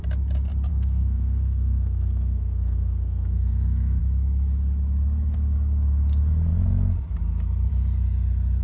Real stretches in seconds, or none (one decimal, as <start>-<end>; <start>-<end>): 0.0-0.7; 4.0-8.6